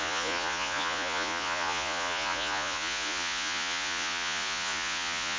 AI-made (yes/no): yes